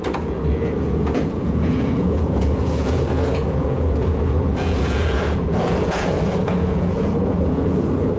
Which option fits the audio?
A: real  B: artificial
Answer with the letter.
B